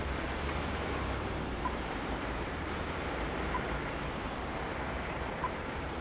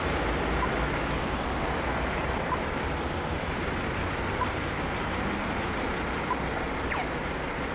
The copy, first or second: first